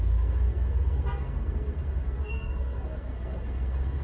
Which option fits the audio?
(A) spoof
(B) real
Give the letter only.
A